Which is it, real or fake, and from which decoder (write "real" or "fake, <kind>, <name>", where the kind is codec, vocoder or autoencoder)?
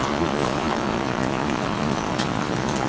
fake, vocoder, Vocos